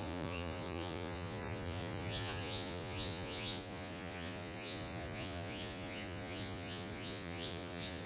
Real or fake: fake